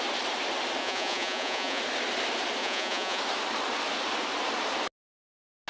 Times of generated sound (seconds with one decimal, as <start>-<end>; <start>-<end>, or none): 0.8-1.8; 2.6-3.2